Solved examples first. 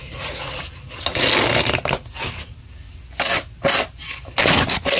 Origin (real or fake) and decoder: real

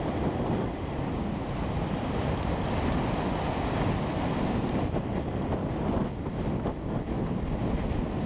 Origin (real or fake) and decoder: real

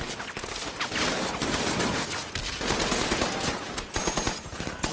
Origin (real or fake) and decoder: real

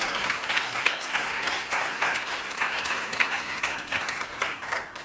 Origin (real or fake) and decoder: fake, codec, SNAC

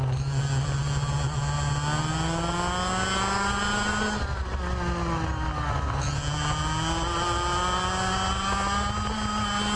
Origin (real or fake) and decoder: real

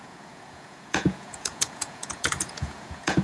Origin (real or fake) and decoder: fake, vocoder, Vocos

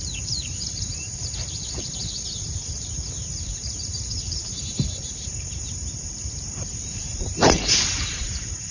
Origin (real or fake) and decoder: fake, vocoder, BigVGAN v2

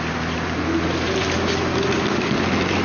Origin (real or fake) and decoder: real